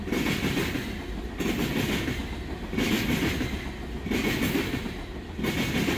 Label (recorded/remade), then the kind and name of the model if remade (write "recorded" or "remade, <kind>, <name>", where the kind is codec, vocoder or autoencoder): recorded